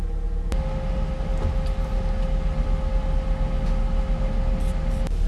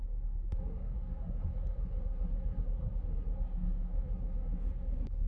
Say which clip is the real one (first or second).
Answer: first